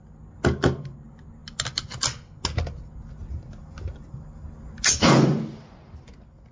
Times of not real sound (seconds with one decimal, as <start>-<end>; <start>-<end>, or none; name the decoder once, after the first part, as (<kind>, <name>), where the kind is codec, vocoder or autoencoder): none